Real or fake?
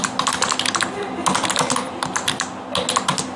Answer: real